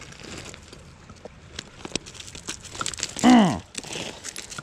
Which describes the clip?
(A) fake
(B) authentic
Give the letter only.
B